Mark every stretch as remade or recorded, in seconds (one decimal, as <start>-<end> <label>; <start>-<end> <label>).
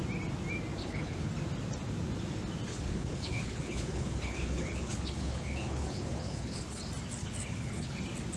0.0-0.8 recorded; 0.8-1.3 remade; 1.3-2.7 recorded; 2.7-6.8 remade; 6.8-7.2 recorded; 7.2-8.0 remade; 8.0-8.4 recorded